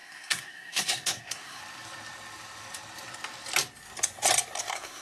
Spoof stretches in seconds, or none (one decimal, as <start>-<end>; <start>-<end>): 0.0-1.6; 4.6-5.0